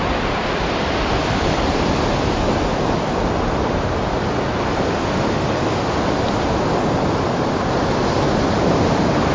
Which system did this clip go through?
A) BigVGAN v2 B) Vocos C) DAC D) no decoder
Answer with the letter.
D